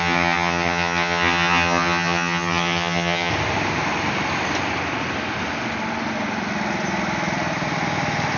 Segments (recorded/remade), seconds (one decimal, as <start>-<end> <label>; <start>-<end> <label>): 0.0-3.3 remade; 3.3-8.4 recorded